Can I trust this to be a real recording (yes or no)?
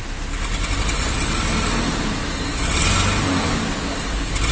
yes